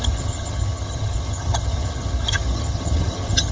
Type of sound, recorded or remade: remade